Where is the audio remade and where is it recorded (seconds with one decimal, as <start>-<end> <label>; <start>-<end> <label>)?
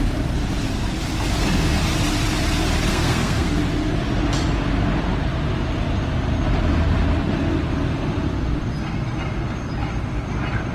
0.0-2.9 recorded; 2.9-3.6 remade; 3.6-10.7 recorded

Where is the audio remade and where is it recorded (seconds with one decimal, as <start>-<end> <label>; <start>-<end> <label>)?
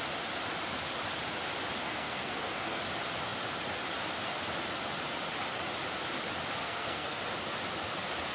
0.0-1.8 recorded; 1.8-2.8 remade; 2.8-6.6 recorded; 6.6-7.2 remade; 7.2-8.3 recorded